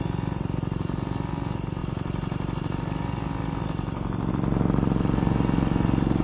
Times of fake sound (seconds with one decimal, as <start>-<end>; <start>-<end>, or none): none